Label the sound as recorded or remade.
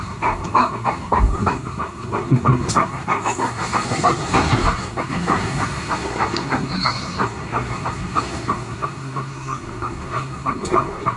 remade